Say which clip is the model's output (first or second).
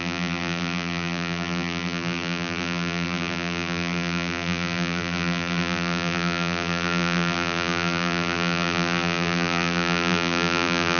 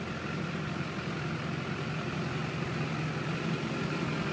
first